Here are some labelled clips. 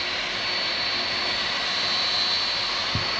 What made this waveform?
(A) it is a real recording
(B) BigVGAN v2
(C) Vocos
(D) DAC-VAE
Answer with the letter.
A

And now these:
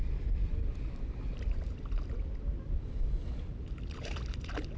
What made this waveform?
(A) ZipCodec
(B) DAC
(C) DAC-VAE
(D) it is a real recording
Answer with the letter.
D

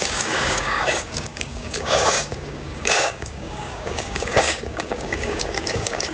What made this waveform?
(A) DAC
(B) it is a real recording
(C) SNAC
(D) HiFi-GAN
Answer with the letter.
A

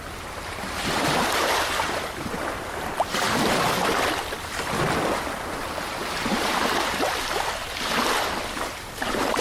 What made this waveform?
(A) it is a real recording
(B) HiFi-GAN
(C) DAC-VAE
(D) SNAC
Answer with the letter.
A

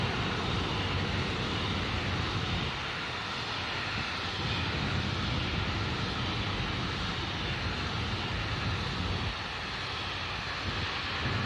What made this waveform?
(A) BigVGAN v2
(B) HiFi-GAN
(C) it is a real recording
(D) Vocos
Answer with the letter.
C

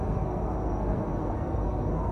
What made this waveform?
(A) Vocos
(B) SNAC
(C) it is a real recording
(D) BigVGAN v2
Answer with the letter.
B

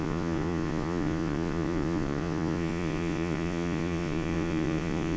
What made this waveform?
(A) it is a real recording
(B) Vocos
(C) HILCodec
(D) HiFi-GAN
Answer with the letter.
B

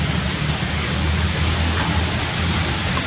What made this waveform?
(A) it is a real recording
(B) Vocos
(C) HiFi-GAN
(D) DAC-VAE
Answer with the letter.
A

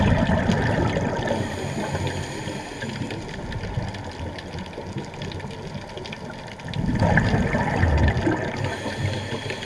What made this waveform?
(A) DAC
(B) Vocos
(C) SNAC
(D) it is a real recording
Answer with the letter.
D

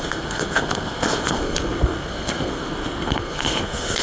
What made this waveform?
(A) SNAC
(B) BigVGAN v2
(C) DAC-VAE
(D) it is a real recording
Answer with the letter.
A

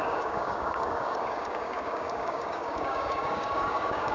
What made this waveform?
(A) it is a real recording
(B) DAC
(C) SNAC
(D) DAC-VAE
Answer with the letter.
B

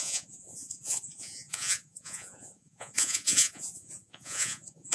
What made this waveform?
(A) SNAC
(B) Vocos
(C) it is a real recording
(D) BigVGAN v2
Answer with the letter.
B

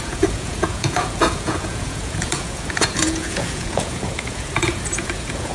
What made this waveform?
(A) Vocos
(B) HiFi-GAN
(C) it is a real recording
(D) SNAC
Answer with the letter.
A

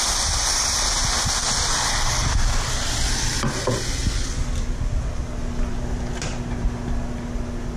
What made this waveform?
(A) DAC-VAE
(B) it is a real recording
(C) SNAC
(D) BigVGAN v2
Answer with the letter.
B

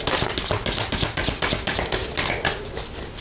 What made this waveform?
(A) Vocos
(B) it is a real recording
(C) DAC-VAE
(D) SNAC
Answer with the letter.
B